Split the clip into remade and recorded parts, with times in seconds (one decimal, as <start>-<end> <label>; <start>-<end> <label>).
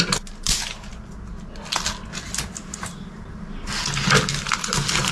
0.0-5.1 recorded